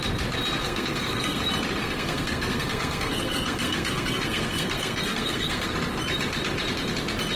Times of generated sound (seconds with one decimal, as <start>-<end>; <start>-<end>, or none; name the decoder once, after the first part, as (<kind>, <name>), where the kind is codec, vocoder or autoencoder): 0.6-1.4 (codec, SNAC); 1.8-5.7